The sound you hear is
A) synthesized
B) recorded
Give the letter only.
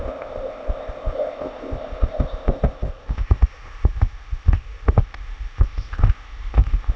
A